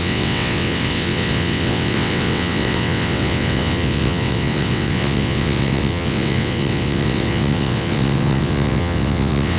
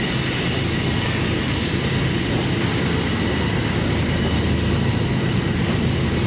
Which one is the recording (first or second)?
second